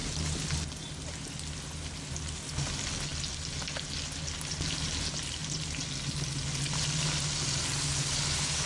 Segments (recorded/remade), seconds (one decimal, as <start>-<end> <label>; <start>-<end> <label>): 0.0-8.7 recorded

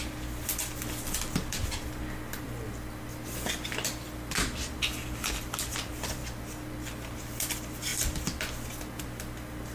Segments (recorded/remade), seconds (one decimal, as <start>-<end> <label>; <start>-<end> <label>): 0.0-9.7 recorded

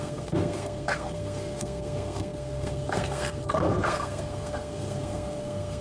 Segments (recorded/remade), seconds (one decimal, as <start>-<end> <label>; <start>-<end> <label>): 0.0-5.8 remade

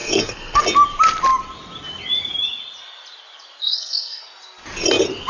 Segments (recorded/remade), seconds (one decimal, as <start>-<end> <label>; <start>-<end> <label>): 0.0-0.6 remade; 0.6-3.6 recorded; 3.6-4.2 remade; 4.2-5.3 recorded